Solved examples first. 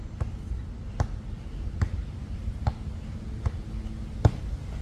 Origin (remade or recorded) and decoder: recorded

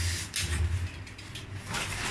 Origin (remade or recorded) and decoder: recorded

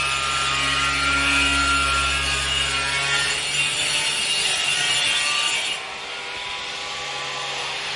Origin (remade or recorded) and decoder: recorded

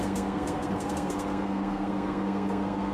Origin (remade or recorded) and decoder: remade, codec, SNAC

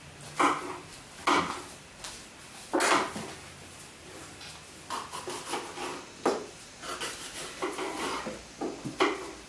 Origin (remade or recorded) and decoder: recorded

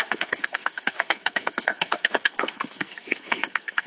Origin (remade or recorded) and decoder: remade, codec, SNAC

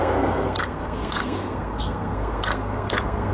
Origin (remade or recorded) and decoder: remade, codec, SNAC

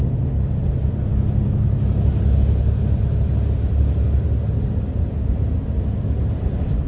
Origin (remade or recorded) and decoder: recorded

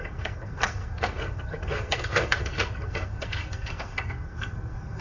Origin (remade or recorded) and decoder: remade, codec, SNAC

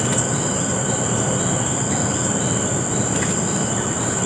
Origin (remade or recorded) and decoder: recorded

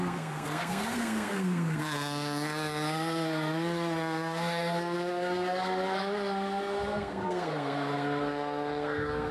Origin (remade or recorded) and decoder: remade, codec, SNAC